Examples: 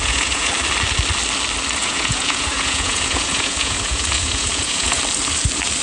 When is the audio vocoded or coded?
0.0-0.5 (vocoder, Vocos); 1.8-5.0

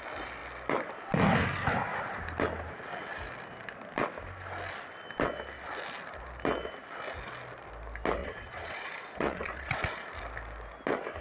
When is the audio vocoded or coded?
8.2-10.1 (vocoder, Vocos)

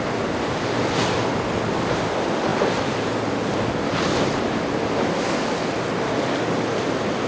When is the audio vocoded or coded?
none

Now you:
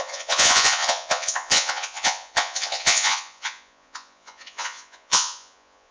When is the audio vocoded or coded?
0.0-5.9 (vocoder, Vocos)

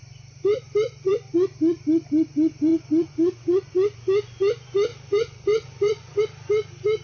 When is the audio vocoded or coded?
2.7-3.7 (vocoder, Vocos); 4.9-6.2

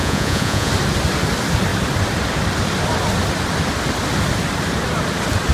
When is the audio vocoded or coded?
0.0-0.7 (vocoder, Vocos)

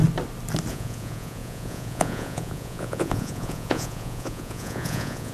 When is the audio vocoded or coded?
0.7-5.3 (vocoder, Vocos)